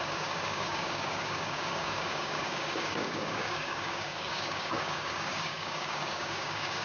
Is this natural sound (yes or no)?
no